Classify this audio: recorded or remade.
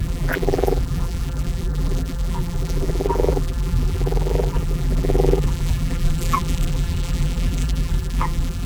remade